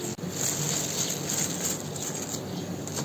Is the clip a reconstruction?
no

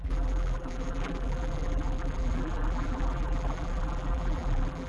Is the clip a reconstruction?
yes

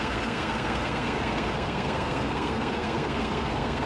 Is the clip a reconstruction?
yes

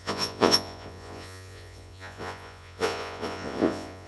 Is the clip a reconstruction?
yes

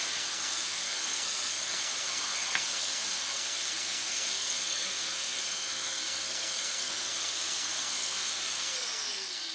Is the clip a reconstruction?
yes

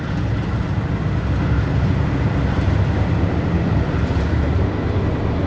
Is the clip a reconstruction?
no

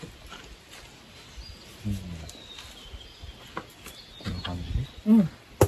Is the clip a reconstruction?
no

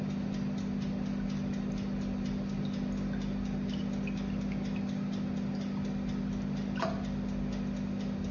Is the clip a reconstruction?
no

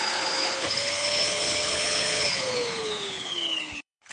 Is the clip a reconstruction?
yes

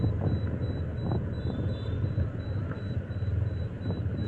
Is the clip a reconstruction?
no